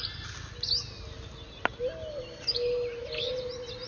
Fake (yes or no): no